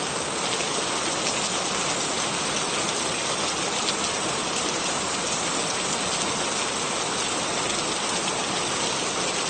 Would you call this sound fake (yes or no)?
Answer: no